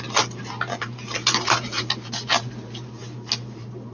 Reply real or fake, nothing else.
real